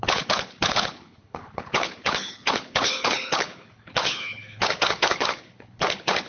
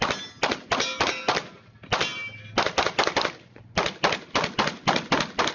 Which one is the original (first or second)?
second